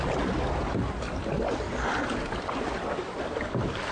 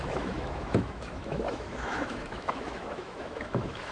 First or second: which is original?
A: first